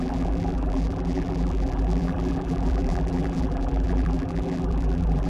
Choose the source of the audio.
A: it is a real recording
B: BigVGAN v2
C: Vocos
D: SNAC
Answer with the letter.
B